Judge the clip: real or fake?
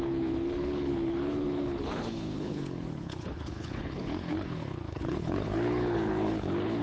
fake